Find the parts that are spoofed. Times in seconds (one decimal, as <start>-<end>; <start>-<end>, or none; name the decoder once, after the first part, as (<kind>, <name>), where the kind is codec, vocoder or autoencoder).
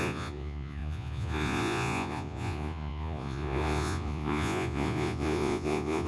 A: 0.0-6.1 (vocoder, Vocos)